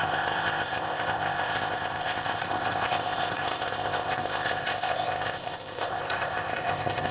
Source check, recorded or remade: remade